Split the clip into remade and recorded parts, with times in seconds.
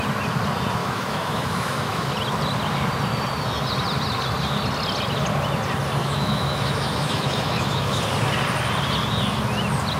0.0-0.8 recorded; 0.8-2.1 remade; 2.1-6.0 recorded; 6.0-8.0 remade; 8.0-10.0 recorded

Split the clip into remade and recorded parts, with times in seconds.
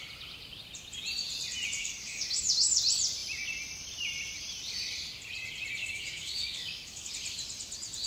0.0-1.8 recorded; 1.8-2.8 remade; 2.8-5.8 recorded; 5.8-7.1 remade; 7.1-8.1 recorded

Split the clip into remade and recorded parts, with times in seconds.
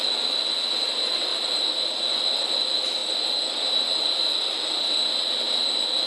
0.0-6.1 recorded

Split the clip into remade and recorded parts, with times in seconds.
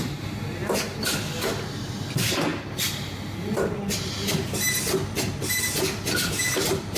0.0-7.0 recorded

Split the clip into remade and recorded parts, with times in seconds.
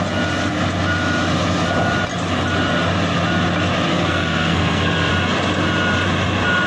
0.0-3.9 recorded; 3.9-5.1 remade; 5.1-6.7 recorded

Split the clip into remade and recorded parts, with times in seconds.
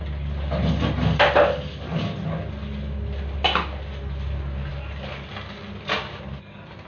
0.0-6.9 recorded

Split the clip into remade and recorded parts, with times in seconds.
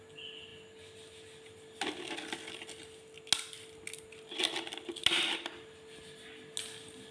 0.0-7.1 recorded